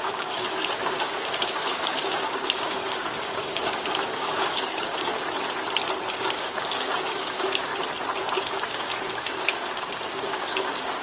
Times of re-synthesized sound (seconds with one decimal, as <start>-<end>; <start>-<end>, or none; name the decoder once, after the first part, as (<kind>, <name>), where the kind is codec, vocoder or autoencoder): 0.0-5.1 (codec, DAC); 6.2-7.7; 8.4-11.0